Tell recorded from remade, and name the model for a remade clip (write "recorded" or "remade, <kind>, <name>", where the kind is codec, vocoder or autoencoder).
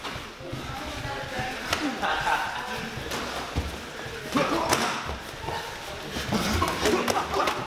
recorded